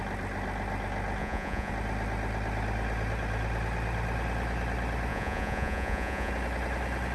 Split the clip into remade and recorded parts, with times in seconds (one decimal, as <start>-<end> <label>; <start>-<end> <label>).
0.0-1.2 recorded; 1.2-1.7 remade; 1.7-5.1 recorded; 5.1-6.3 remade; 6.3-7.1 recorded